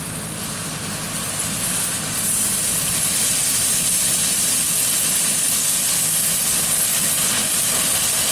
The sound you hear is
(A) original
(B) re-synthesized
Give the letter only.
A